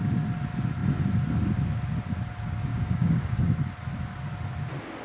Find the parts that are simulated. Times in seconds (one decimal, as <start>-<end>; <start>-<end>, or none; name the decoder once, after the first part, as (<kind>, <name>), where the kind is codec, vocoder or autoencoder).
2.7-3.4 (codec, DAC)